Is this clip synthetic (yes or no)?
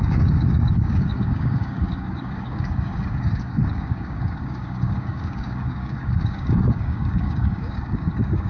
yes